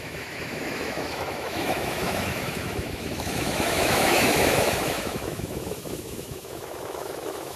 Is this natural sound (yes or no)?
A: no